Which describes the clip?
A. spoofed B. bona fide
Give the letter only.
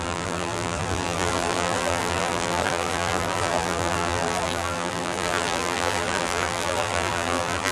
A